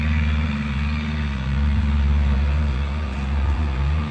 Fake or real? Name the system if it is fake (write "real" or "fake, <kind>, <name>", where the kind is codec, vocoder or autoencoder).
fake, vocoder, Vocos